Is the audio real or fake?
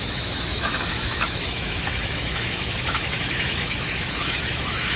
fake